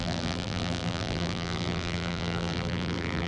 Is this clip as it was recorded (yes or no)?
no